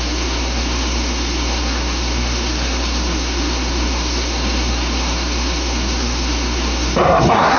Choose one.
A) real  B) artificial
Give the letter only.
B